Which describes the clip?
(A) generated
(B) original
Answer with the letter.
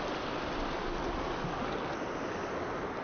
B